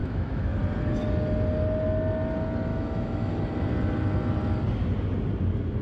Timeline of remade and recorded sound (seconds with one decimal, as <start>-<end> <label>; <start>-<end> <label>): 0.0-0.6 remade; 0.6-2.7 recorded; 2.7-3.3 remade; 3.3-5.8 recorded